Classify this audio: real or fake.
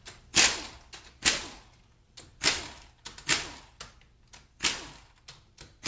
real